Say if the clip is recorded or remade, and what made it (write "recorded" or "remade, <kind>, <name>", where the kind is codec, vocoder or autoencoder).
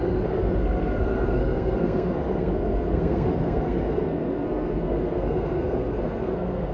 remade, codec, SNAC